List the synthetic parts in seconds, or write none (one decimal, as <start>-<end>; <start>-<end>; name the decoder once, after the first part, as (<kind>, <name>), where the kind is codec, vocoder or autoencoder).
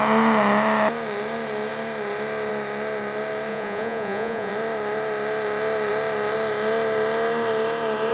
3.5-4.5 (vocoder, Vocos)